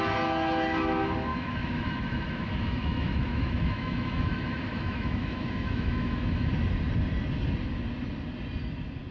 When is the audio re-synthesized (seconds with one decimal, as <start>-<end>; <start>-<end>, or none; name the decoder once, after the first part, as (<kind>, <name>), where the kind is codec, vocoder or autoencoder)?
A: 1.3-6.5 (autoencoder, DAC-VAE)